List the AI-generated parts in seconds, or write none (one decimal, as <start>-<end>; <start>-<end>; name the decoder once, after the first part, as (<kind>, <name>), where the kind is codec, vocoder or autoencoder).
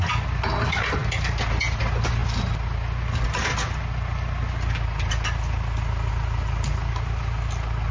none